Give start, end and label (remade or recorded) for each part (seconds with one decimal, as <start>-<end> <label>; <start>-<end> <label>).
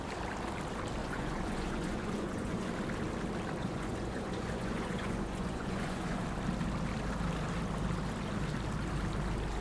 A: 0.0-1.0 recorded; 1.0-2.7 remade; 2.7-3.6 recorded; 3.6-6.2 remade; 6.2-9.6 recorded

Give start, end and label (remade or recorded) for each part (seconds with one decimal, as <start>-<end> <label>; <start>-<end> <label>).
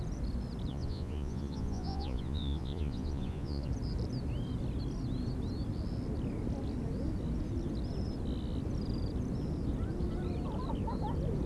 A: 0.0-0.7 recorded; 0.7-3.7 remade; 3.7-11.5 recorded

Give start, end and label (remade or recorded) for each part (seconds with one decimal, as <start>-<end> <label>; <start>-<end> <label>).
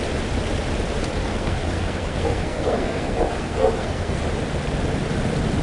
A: 0.0-1.2 recorded; 1.2-4.2 remade; 4.2-5.6 recorded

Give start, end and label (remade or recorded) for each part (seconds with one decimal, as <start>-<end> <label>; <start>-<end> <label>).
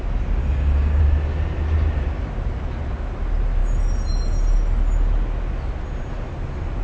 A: 0.0-0.4 recorded; 0.4-1.0 remade; 1.0-6.8 recorded